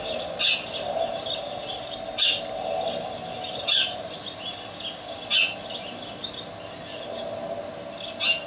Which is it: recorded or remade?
recorded